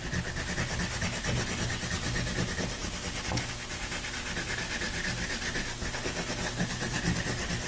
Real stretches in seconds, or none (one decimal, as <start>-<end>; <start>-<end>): 0.0-7.7